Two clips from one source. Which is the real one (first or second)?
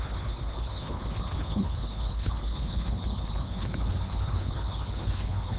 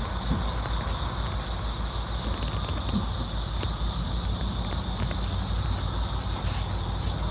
second